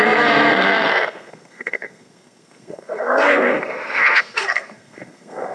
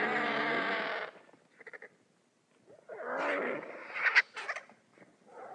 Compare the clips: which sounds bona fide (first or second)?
second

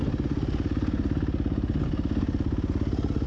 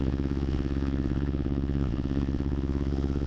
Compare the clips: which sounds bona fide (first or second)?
first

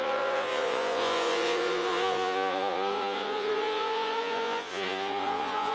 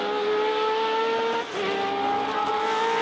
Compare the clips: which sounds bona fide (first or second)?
second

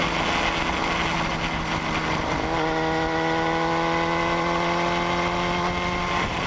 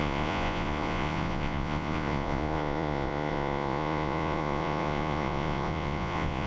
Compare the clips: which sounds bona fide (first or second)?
first